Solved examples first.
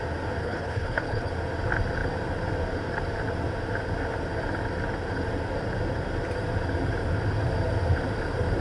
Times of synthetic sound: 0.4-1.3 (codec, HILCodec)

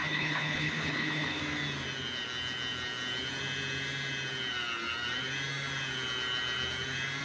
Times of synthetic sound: 0.0-1.4 (codec, HILCodec)

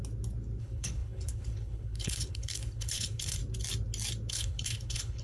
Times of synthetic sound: 0.6-3.4 (codec, HILCodec); 4.3-5.2

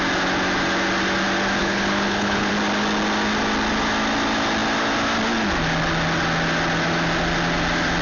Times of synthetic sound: 1.6-2.5 (codec, HILCodec)

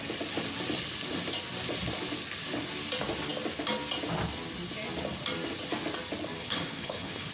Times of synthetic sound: 6.4-7.3 (codec, HILCodec)

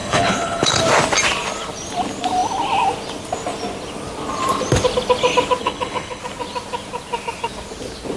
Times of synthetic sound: 0.0-0.8 (codec, HILCodec); 5.6-6.2